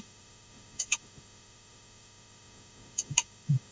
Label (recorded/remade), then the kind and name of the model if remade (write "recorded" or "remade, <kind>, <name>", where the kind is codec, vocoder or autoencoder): remade, autoencoder, DAC-VAE